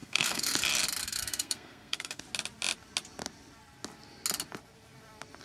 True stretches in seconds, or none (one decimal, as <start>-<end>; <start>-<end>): 0.5-1.0; 2.2-5.4